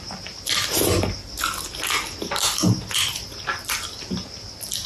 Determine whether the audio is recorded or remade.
recorded